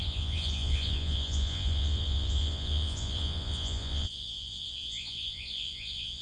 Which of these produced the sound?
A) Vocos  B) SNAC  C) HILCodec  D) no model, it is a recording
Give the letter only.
A